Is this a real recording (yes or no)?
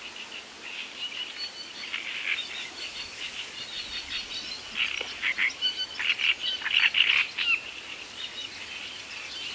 yes